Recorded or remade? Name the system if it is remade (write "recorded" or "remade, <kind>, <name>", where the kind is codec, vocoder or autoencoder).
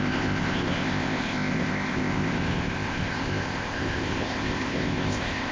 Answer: remade, codec, ZipCodec